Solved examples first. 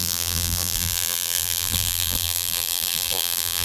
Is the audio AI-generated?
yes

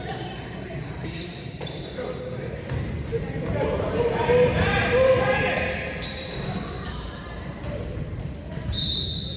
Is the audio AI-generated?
yes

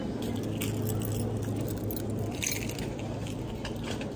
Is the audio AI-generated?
no